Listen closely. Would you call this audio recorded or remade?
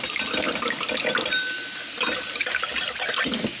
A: recorded